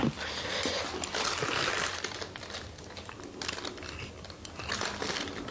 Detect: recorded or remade recorded